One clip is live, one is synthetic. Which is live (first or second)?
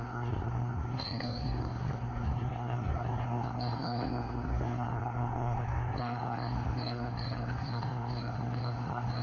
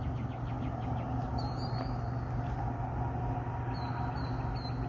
second